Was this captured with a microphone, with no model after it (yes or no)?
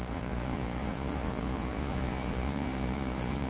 no